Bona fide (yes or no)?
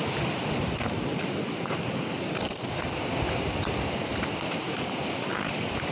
yes